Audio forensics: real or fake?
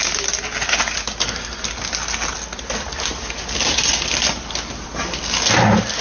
real